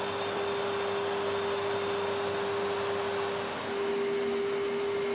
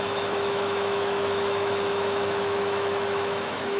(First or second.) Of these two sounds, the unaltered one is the first